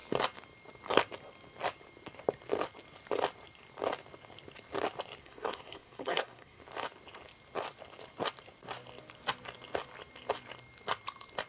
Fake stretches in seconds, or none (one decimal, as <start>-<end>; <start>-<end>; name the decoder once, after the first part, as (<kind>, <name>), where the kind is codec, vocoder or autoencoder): 5.2-6.6 (codec, SNAC)